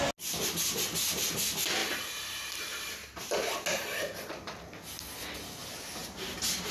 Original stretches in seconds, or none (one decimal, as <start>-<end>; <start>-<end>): 0.0-1.8; 3.3-6.0